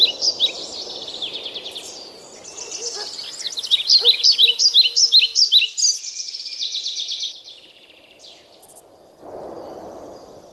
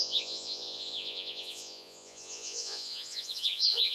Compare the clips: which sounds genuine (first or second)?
first